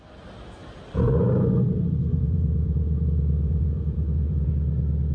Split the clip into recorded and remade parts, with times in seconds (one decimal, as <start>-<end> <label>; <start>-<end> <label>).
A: 0.0-2.1 recorded; 2.1-4.5 remade; 4.5-5.1 recorded